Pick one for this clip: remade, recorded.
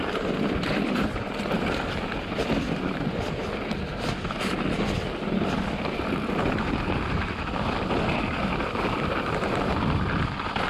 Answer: recorded